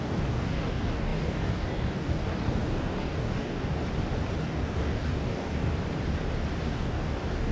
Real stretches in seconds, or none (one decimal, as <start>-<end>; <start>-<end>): 3.8-4.4; 5.7-6.6